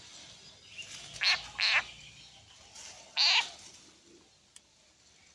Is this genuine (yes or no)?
yes